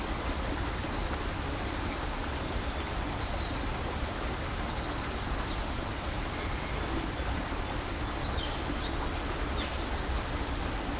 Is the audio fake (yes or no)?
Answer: no